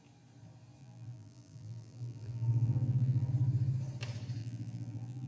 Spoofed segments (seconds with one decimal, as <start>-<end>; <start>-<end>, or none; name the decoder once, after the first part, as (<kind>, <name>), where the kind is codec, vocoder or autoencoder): 0.8-3.3 (vocoder, BigVGAN v2); 4.4-5.3